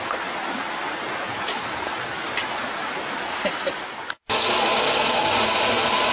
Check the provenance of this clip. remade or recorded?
recorded